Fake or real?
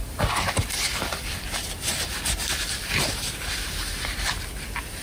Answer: fake